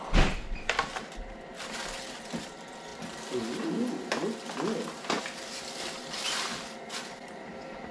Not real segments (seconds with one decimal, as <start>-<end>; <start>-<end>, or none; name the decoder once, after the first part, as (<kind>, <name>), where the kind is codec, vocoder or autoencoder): none